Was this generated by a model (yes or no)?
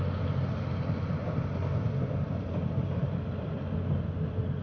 no